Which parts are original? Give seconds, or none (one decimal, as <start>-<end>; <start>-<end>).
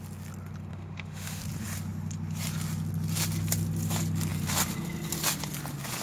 0.0-0.7; 1.4-6.0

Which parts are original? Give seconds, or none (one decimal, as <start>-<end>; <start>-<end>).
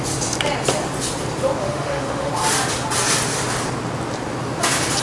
0.0-1.6; 2.3-5.0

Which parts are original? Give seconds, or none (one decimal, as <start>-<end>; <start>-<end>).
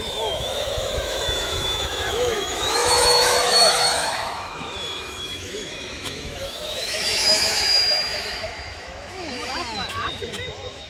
none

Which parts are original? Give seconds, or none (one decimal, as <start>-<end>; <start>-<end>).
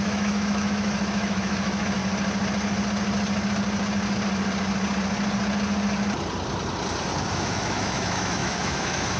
2.0-7.3